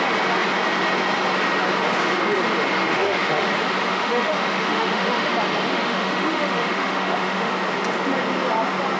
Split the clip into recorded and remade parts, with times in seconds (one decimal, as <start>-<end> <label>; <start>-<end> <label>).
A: 0.0-2.9 recorded; 2.9-3.5 remade; 3.5-3.9 recorded; 3.9-5.3 remade; 5.3-5.7 recorded; 5.7-7.5 remade; 7.5-9.0 recorded